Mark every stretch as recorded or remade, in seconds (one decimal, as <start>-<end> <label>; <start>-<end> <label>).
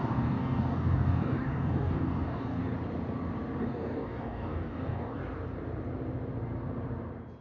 0.0-2.6 remade; 2.6-3.6 recorded; 3.6-5.2 remade; 5.2-7.4 recorded